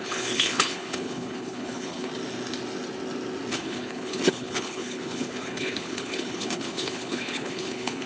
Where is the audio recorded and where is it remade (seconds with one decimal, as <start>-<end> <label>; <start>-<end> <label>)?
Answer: 0.0-2.1 remade; 2.1-3.5 recorded; 3.5-8.1 remade